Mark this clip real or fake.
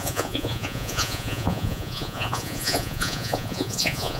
fake